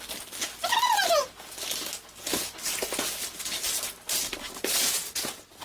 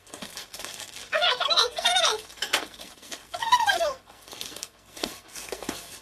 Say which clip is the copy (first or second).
second